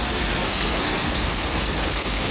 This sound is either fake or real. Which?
fake